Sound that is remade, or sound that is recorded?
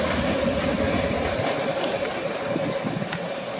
recorded